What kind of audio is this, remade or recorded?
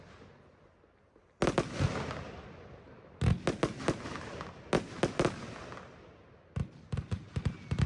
recorded